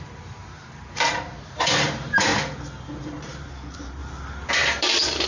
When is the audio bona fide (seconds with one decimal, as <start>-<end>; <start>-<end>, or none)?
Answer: 2.3-3.0; 4.0-4.5